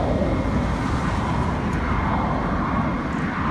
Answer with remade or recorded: recorded